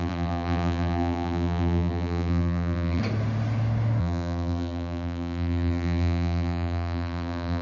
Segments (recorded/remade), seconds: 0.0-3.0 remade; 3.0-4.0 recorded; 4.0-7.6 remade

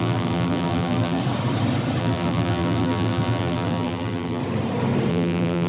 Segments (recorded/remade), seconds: 0.0-1.2 remade; 1.2-2.0 recorded; 2.0-4.4 remade; 4.4-5.1 recorded; 5.1-5.7 remade

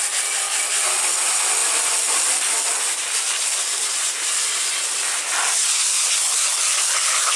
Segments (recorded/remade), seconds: 0.0-7.4 recorded

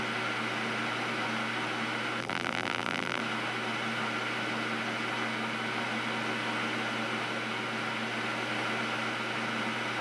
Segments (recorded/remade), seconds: 0.0-2.2 recorded; 2.2-3.2 remade; 3.2-10.0 recorded